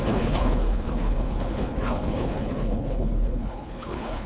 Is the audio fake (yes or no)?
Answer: yes